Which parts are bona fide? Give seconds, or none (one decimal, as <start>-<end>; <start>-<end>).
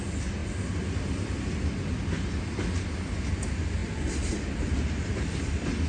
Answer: 0.0-5.9